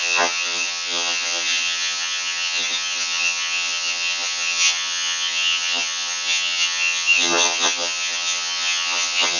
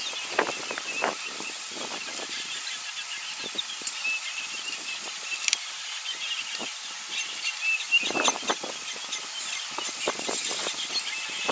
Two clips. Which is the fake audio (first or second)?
first